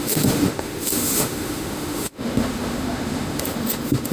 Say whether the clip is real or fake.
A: fake